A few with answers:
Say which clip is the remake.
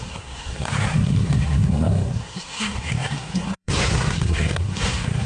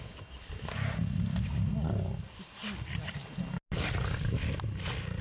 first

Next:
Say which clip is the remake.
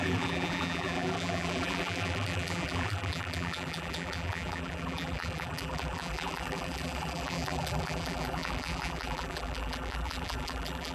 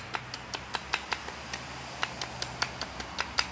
first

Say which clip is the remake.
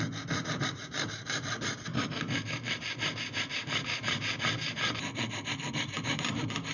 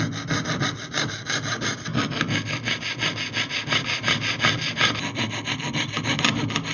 first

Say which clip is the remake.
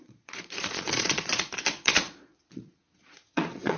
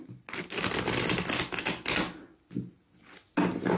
first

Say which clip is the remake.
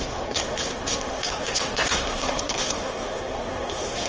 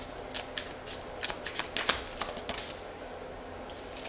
first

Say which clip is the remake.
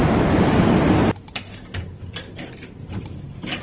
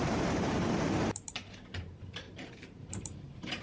second